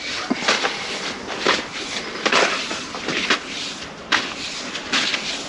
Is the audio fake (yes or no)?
no